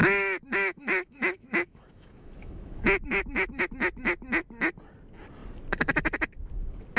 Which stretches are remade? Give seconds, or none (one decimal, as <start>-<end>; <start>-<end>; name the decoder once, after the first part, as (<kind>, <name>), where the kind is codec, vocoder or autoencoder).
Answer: 0.0-3.6 (autoencoder, DAC-VAE)